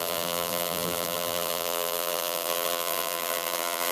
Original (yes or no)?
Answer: no